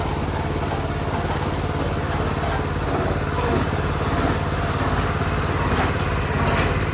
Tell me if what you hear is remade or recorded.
recorded